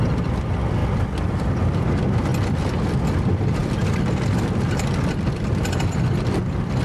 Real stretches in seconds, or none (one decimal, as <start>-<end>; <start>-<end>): 0.0-6.8